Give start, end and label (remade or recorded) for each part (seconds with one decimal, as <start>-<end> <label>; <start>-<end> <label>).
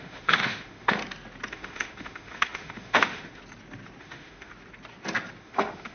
0.0-1.0 remade; 1.0-1.5 recorded; 1.5-3.4 remade; 3.4-4.0 recorded; 4.0-4.5 remade; 4.5-5.4 recorded; 5.4-5.9 remade